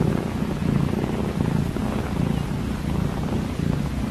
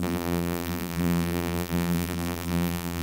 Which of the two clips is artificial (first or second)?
second